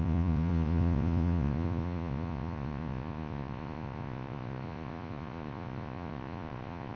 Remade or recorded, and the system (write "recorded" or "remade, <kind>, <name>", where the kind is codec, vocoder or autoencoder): remade, vocoder, Vocos